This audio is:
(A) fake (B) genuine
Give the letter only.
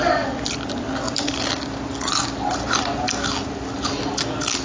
B